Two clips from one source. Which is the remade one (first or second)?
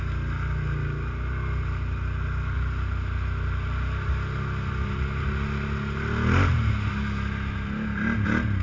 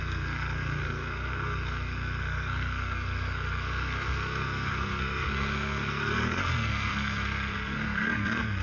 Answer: second